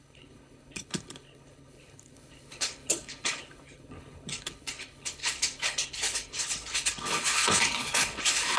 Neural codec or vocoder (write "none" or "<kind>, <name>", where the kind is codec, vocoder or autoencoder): codec, HILCodec